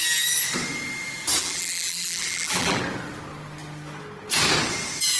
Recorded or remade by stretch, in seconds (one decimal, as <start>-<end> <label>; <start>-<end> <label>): 0.0-1.4 recorded; 1.4-2.8 remade; 2.8-5.2 recorded